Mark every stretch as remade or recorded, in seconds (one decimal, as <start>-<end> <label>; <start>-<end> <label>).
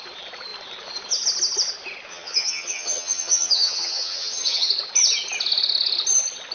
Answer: 0.0-2.1 recorded; 2.1-4.7 remade; 4.7-6.5 recorded